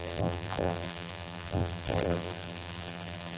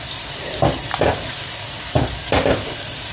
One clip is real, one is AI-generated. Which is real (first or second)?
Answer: second